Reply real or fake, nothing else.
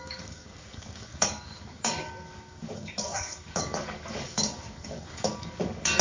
fake